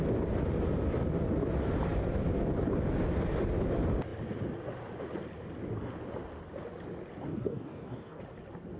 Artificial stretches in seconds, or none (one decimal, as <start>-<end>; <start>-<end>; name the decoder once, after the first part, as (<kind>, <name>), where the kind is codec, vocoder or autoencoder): 7.3-8.2 (codec, DAC)